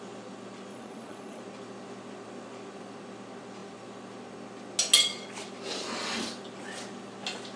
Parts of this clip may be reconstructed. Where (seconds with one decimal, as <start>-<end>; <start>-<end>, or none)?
0.7-1.4

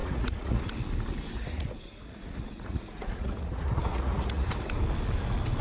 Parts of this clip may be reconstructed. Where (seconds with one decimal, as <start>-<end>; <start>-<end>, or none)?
0.0-0.7; 1.4-4.5

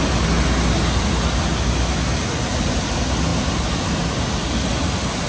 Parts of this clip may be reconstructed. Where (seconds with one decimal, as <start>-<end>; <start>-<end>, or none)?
none

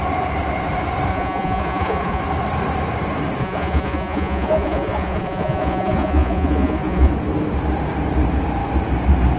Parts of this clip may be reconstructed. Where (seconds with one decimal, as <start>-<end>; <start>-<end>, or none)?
1.1-2.2; 3.4-7.1

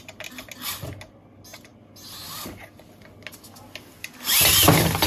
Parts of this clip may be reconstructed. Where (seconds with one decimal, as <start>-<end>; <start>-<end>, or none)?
none